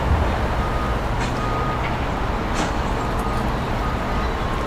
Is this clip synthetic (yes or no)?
no